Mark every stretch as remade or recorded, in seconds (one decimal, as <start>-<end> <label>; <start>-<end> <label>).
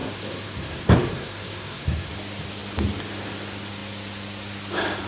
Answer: 0.0-2.1 remade; 2.1-5.1 recorded